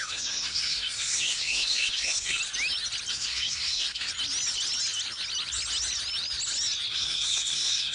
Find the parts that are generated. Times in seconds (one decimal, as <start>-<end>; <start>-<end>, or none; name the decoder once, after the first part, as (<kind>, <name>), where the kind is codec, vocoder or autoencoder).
0.0-2.4 (codec, SNAC); 3.1-4.1; 6.9-7.9